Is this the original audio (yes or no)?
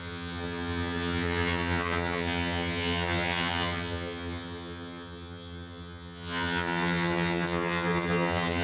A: no